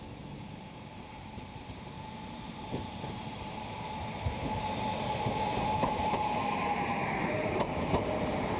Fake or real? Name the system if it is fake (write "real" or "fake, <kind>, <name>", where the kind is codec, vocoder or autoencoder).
fake, vocoder, BigVGAN v2